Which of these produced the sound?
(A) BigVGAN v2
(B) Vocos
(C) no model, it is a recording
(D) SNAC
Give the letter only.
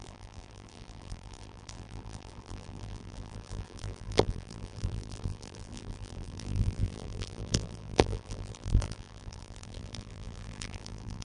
A